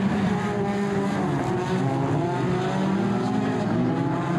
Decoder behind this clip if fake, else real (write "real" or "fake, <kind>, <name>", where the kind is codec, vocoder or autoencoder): real